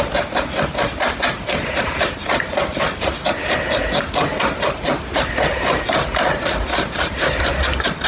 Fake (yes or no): no